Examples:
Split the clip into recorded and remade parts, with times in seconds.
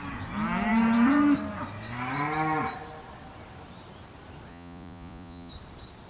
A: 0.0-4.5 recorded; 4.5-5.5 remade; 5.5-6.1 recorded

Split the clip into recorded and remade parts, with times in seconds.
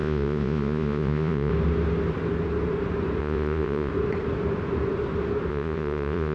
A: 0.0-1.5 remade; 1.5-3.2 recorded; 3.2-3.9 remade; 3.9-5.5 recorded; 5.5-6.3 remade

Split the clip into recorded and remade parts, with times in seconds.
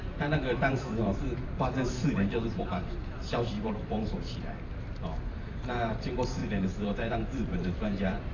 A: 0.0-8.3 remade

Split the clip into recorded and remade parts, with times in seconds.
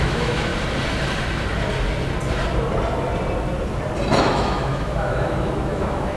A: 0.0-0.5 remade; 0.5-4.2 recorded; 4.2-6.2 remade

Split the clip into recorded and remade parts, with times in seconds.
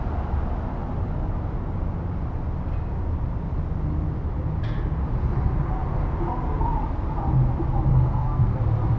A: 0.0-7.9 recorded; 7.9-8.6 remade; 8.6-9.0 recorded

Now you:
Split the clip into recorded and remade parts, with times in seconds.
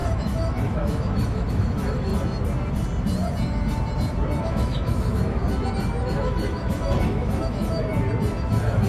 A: 0.0-2.1 remade; 2.1-4.4 recorded; 4.4-5.4 remade; 5.4-6.0 recorded; 6.0-7.9 remade; 7.9-8.5 recorded; 8.5-8.9 remade